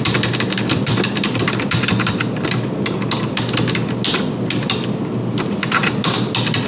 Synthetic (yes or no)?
no